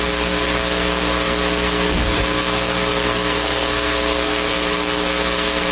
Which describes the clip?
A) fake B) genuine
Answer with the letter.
A